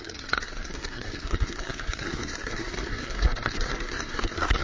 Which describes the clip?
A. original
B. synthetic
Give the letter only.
B